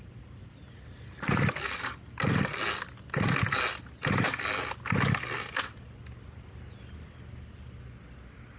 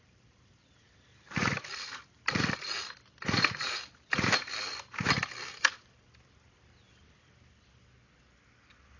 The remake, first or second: second